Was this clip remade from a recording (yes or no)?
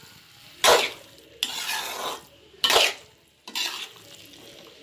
no